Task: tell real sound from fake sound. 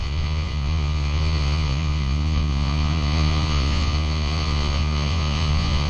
fake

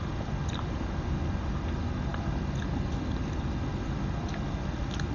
real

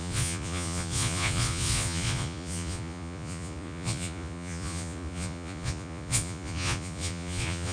fake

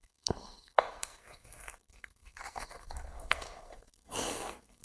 fake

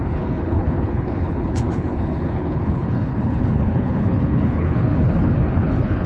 fake